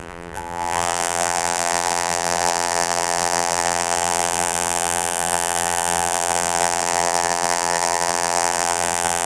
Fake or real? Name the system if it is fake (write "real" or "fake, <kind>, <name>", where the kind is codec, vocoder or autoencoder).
fake, vocoder, BigVGAN v2